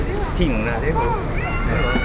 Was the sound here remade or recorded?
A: recorded